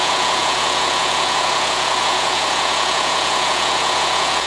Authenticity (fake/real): fake